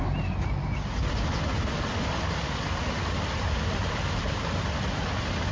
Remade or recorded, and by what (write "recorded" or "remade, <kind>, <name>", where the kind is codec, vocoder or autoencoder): recorded